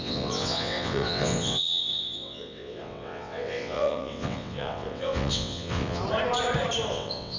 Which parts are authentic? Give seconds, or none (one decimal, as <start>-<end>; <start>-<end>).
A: 6.0-6.9